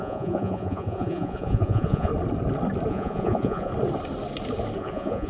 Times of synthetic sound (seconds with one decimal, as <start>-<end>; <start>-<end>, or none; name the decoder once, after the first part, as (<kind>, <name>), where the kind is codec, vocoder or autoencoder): 0.0-2.1 (vocoder, Vocos); 2.9-3.7; 4.8-5.3